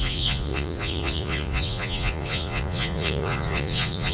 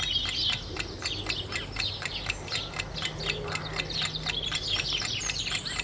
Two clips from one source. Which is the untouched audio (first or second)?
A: second